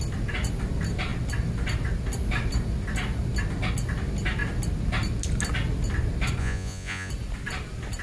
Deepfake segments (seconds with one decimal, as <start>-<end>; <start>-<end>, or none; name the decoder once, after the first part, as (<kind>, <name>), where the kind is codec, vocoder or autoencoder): 6.4-7.1 (vocoder, Vocos)